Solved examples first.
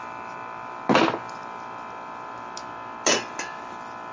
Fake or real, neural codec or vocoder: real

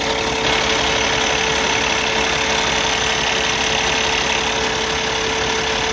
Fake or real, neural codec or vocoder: real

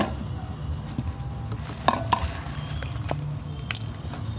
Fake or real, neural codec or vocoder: real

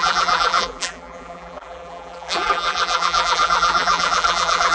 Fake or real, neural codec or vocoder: fake, vocoder, BigVGAN v2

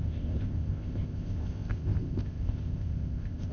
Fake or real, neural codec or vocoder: fake, codec, ZipCodec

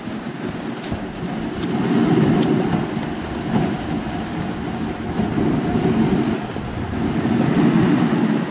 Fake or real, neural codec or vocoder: real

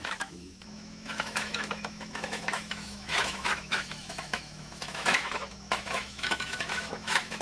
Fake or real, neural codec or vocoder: fake, autoencoder, DAC-VAE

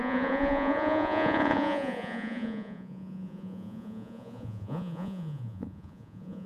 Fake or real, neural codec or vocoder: fake, vocoder, Vocos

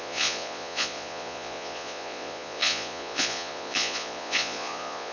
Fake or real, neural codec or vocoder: fake, vocoder, Vocos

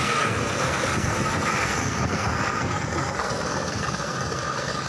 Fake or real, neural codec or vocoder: fake, codec, SNAC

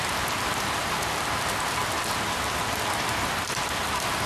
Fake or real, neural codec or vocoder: real